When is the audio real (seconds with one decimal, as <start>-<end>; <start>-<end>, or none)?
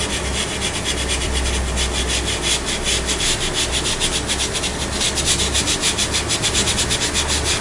0.0-7.6